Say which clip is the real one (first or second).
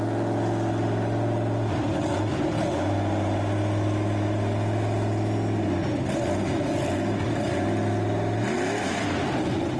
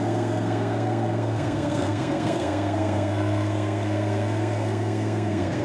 first